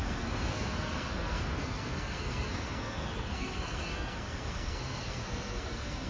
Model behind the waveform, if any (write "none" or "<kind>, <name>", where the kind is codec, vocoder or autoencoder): codec, SNAC